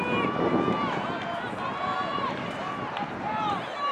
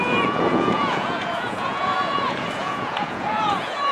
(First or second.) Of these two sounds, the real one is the first